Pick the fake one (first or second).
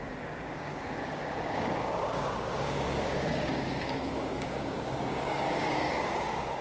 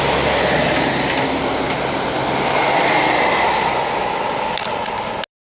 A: first